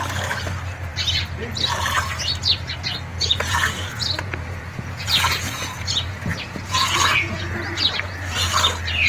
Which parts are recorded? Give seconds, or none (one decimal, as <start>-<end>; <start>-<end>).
0.0-3.1; 7.5-9.1